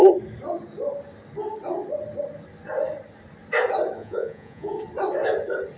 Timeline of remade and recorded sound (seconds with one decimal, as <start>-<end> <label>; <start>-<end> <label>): 0.0-4.0 recorded; 4.0-4.8 remade; 4.8-5.8 recorded